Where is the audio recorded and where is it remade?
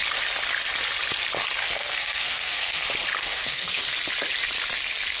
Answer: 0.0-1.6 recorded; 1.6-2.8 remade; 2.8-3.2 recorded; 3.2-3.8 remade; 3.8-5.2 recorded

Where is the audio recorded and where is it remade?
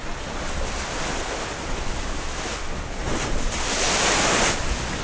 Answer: 0.0-5.0 recorded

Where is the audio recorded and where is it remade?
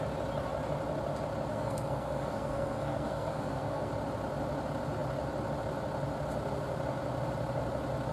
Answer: 0.0-1.5 recorded; 1.5-3.9 remade; 3.9-8.1 recorded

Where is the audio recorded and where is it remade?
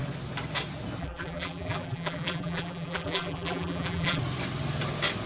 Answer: 0.0-1.0 recorded; 1.0-4.2 remade; 4.2-5.3 recorded